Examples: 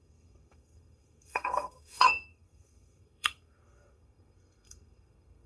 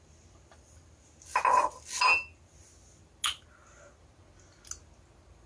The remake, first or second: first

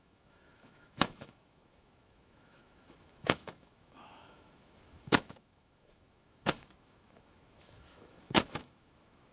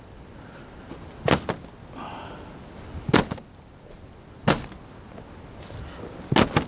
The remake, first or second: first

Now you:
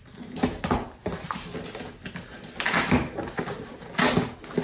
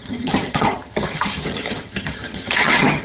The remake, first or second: second